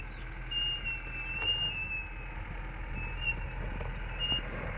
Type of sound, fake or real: real